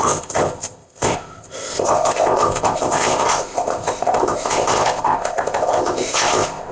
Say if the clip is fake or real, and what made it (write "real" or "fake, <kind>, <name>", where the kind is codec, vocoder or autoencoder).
fake, codec, ZipCodec